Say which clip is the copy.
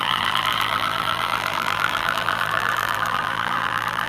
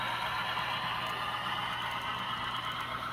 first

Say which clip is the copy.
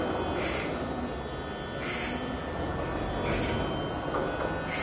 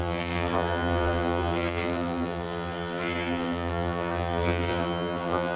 second